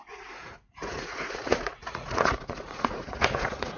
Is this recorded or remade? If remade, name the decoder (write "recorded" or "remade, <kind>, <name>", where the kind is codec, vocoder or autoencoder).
remade, vocoder, Vocos